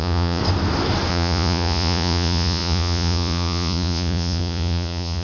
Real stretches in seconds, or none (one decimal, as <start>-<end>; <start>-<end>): 0.4-1.1